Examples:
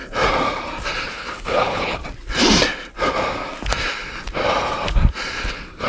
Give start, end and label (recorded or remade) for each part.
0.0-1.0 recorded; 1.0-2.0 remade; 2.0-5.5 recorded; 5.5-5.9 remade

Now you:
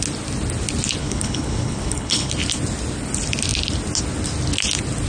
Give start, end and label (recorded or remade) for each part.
0.0-1.0 recorded; 1.0-2.3 remade; 2.3-5.1 recorded

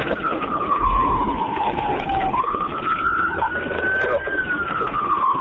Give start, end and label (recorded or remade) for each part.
0.0-3.5 remade; 3.5-4.7 recorded; 4.7-5.4 remade

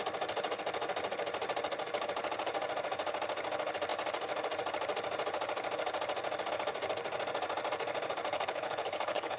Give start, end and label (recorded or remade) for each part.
0.0-8.3 recorded; 8.3-9.4 remade